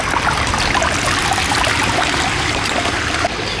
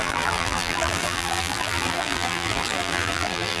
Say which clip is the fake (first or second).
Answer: second